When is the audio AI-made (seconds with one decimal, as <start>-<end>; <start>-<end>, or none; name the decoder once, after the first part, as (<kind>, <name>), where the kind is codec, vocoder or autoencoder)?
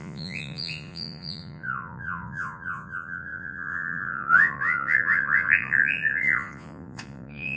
0.0-7.6 (vocoder, Vocos)